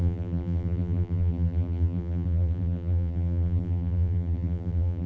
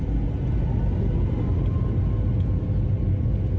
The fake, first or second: first